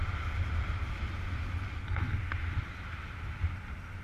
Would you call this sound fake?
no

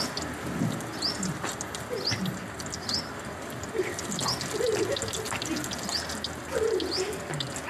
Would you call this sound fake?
no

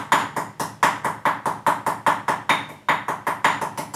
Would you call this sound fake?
no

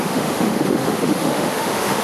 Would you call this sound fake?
yes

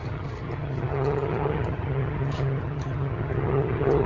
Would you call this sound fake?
yes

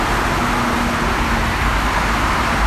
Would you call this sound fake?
no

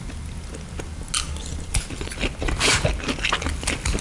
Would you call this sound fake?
no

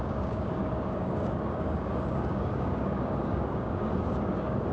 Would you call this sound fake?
yes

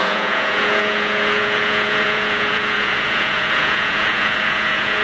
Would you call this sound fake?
yes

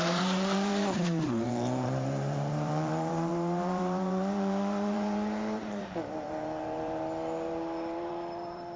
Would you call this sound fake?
yes